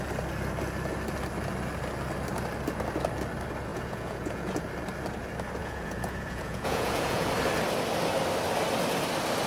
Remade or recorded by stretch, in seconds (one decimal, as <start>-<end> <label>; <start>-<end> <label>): 0.0-3.7 recorded; 3.7-4.6 remade; 4.6-5.6 recorded; 5.6-7.3 remade; 7.3-9.5 recorded

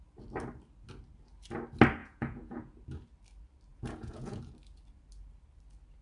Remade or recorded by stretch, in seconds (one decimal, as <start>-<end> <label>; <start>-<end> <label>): 0.0-2.0 recorded; 2.0-2.8 remade; 2.8-3.7 recorded; 3.7-4.4 remade; 4.4-6.0 recorded